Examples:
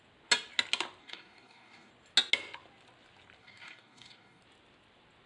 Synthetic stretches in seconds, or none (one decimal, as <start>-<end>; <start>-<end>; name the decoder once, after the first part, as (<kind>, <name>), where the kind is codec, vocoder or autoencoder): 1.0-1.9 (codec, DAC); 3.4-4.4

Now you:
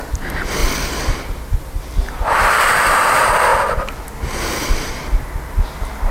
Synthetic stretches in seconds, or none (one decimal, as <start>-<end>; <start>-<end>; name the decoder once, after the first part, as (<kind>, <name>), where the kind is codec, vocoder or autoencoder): none

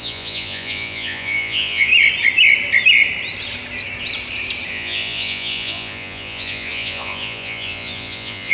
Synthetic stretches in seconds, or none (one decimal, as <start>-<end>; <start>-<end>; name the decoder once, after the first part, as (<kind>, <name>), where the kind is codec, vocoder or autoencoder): 0.0-1.9 (vocoder, Vocos); 4.7-8.5

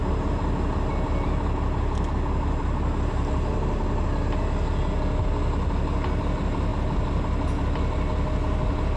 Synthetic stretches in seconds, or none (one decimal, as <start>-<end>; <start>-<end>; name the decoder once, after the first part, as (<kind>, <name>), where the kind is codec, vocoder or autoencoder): none

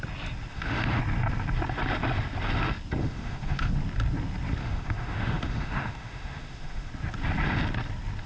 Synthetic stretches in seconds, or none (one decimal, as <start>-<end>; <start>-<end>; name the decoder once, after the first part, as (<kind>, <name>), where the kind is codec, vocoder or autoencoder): 0.5-1.0 (autoencoder, DAC-VAE); 3.0-3.7; 4.6-6.9

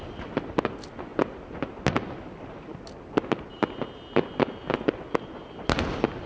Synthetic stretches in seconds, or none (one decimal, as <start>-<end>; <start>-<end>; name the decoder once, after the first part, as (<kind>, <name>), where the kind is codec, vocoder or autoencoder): none

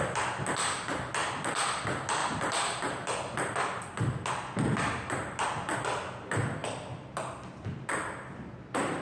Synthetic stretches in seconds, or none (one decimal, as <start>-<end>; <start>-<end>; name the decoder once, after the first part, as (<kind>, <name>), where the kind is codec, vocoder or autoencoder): 1.2-1.8 (vocoder, BigVGAN v2); 2.2-3.8; 6.6-7.1